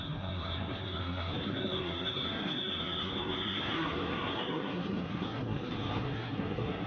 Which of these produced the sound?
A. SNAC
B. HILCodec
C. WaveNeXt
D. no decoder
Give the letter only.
A